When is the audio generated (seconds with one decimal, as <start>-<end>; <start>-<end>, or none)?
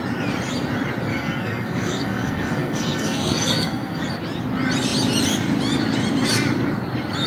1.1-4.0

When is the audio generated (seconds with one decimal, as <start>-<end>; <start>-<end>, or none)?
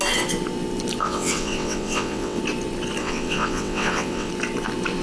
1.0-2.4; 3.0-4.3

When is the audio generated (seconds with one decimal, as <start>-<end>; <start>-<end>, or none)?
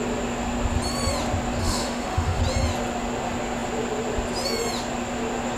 1.6-2.4